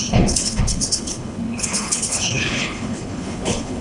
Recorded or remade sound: remade